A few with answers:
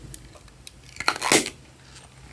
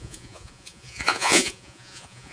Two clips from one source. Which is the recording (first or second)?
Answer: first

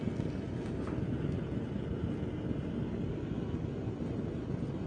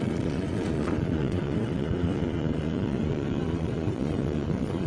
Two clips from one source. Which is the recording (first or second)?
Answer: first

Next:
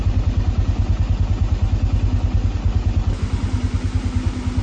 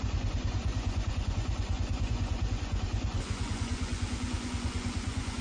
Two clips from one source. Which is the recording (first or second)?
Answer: first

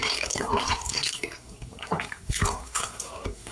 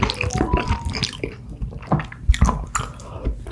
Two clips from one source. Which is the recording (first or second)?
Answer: second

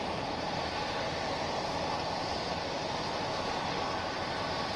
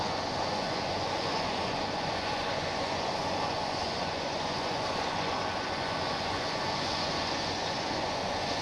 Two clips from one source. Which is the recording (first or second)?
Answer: first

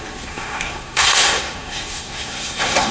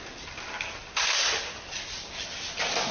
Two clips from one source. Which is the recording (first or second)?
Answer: second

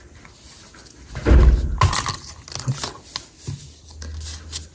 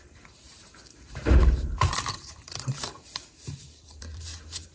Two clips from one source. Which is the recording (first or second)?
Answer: first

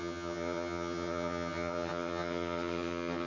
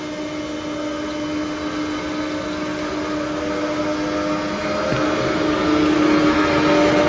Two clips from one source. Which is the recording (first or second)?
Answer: second